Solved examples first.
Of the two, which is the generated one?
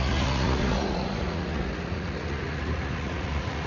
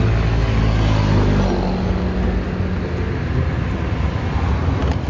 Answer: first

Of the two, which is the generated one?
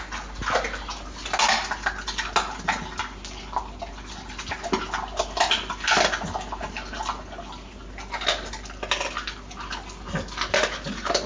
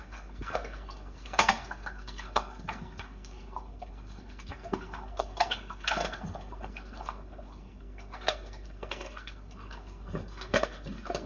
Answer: second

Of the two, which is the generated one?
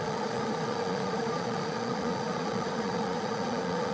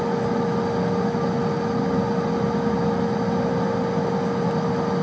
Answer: first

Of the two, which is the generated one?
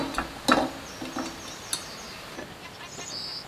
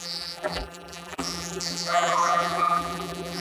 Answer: second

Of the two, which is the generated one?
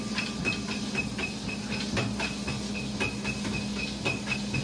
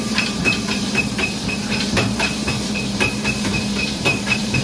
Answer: second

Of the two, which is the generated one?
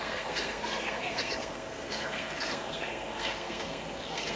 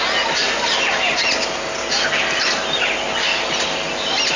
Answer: first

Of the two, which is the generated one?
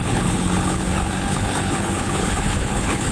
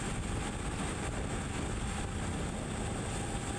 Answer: first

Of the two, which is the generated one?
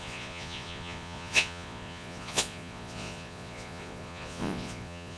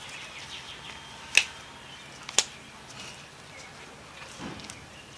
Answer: first